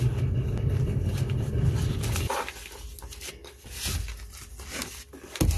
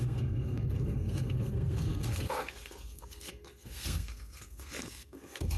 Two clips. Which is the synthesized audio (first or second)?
second